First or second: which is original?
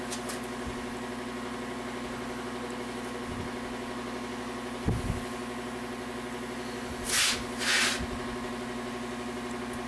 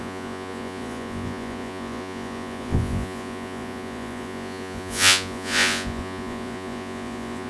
first